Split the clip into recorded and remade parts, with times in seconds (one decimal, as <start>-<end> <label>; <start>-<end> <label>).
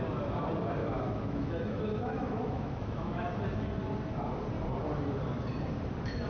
0.0-0.8 recorded; 0.8-3.3 remade; 3.3-6.3 recorded